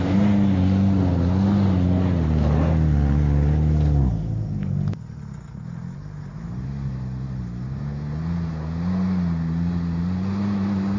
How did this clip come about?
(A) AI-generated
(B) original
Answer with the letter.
B